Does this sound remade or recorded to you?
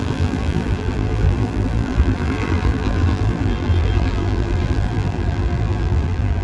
remade